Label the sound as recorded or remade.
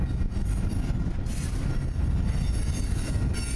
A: recorded